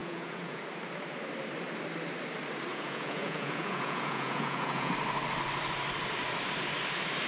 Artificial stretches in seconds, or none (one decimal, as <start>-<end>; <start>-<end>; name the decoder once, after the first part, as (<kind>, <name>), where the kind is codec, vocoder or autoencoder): 0.0-0.6 (vocoder, Vocos); 2.7-4.9